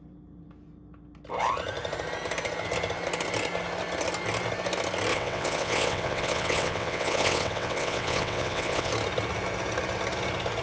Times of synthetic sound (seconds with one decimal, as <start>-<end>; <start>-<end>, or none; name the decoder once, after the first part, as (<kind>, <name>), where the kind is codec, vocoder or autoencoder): 5.1-8.9 (vocoder, WaveNeXt)